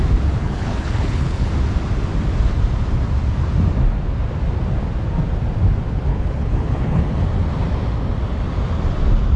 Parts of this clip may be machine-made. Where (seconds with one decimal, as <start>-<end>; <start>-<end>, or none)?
0.4-1.5; 6.1-7.0